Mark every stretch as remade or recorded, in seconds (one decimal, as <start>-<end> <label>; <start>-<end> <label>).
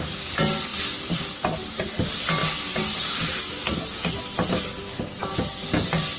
0.0-6.2 recorded